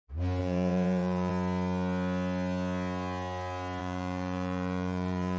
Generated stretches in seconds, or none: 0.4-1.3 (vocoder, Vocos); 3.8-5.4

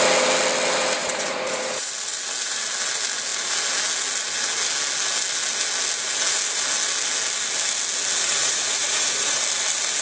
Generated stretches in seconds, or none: 1.0-1.9 (vocoder, Vocos); 8.4-9.4

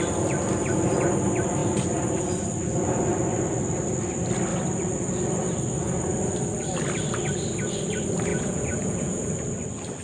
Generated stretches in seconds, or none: 8.3-9.3 (vocoder, Vocos)

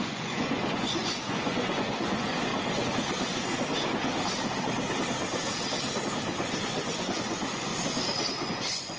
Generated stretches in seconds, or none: 0.0-2.5 (vocoder, Vocos); 6.6-7.7; 8.5-9.0

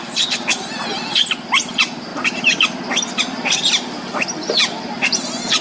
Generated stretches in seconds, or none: none